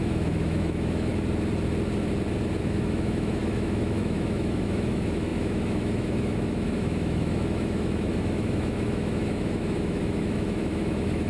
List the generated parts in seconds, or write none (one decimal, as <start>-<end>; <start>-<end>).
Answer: 0.0-1.1; 2.6-11.3